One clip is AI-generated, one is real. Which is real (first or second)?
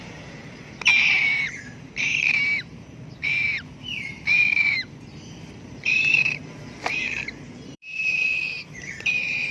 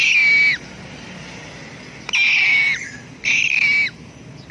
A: second